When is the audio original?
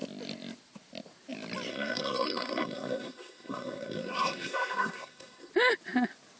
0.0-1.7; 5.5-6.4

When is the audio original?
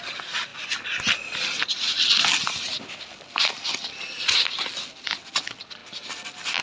0.0-6.6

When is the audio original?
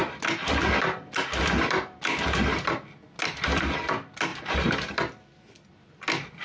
0.0-6.4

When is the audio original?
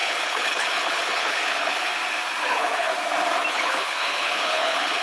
1.9-2.4; 2.9-3.5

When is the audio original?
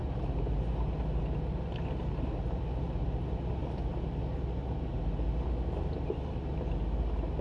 0.0-7.4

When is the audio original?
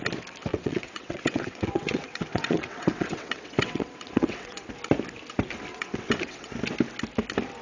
0.0-0.5; 4.7-5.7; 6.5-7.6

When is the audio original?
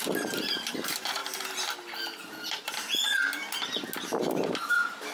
0.0-5.1